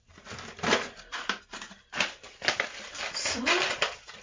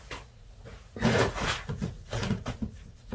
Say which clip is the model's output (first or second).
second